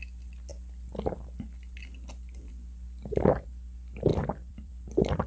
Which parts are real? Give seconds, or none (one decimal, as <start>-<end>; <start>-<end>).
0.0-4.1; 4.7-5.3